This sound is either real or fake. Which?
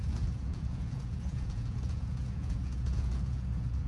fake